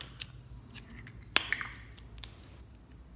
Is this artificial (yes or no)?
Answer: no